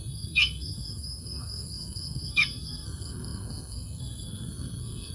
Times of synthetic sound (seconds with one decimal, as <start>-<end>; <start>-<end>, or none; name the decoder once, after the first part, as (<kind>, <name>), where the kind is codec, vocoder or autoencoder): 0.0-5.1 (codec, SNAC)